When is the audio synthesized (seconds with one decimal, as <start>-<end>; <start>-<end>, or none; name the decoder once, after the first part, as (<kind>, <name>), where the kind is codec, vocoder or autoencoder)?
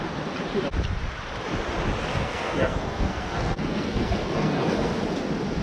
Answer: 2.1-4.9 (codec, SNAC)